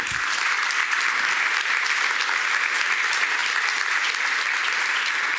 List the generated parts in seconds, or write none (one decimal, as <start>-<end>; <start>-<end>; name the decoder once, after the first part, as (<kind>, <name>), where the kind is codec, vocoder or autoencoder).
none